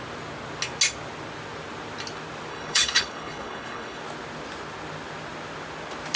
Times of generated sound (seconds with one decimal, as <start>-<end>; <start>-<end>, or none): 2.5-4.0